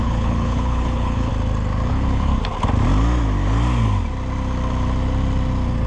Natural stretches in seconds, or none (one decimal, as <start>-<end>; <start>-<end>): 1.3-1.9; 2.3-5.9